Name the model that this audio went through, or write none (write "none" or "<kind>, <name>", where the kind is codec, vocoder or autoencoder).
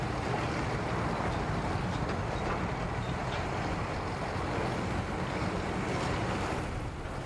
none